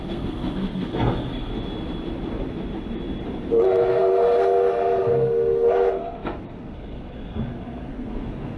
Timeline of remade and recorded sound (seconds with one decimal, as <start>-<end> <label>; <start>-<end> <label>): 0.0-1.5 remade; 1.5-3.5 recorded; 3.5-8.6 remade